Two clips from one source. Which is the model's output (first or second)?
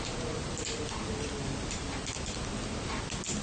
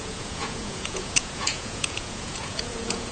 second